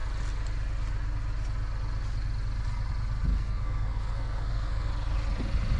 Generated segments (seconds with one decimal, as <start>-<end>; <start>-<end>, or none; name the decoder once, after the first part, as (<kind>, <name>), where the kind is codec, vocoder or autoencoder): 3.3-4.9 (codec, SNAC)